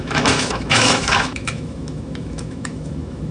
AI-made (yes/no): yes